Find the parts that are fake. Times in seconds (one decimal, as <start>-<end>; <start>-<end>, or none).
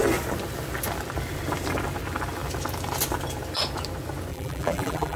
4.3-5.2